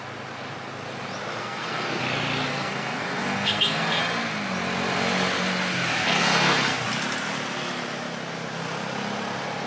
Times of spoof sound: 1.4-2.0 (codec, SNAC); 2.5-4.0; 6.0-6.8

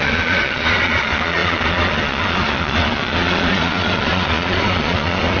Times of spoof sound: 0.0-5.4 (vocoder, Vocos)

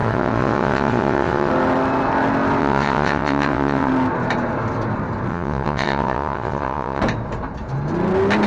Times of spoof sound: 0.0-1.5 (vocoder, WaveNeXt); 2.6-3.9; 5.3-7.0